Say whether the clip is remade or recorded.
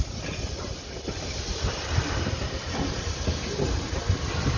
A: recorded